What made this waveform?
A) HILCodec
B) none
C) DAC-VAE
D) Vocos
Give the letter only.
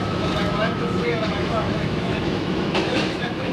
C